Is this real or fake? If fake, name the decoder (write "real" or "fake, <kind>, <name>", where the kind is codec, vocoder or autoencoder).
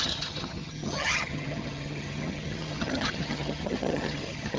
fake, vocoder, HiFi-GAN